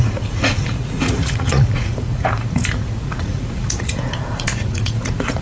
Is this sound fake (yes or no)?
yes